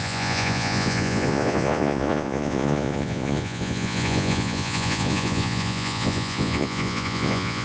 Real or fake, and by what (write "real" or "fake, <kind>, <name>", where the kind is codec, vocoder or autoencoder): fake, vocoder, Vocos